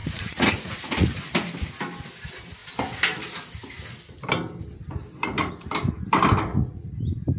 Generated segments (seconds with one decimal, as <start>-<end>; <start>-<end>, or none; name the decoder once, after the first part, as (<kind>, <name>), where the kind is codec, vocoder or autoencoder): 0.0-1.3 (vocoder, Vocos); 6.5-7.0